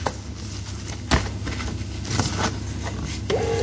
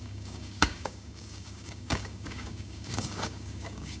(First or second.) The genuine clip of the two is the first